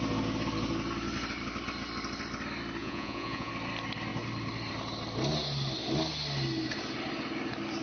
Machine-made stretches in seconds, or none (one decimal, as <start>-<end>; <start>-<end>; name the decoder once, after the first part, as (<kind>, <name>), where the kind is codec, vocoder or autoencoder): 2.8-3.5 (vocoder, Vocos)